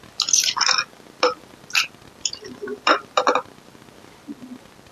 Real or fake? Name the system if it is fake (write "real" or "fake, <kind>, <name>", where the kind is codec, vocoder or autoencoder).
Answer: real